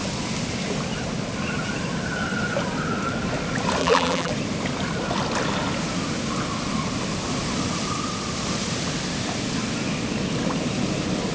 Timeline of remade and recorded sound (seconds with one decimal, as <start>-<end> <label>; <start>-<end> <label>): 0.0-3.8 recorded; 3.8-4.3 remade; 4.3-11.3 recorded